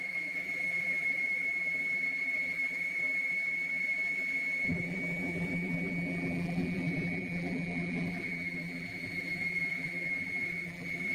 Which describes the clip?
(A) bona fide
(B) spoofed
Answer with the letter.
B